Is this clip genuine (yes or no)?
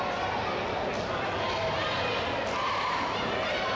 yes